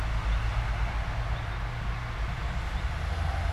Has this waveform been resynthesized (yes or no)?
no